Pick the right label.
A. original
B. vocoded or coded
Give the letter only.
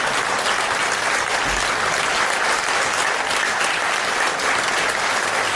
A